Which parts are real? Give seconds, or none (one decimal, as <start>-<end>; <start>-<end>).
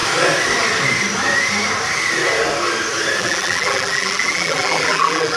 0.0-3.2